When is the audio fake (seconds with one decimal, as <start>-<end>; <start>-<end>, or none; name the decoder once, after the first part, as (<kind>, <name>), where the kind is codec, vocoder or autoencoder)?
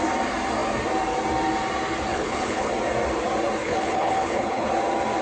2.1-2.7 (codec, HILCodec); 3.6-4.7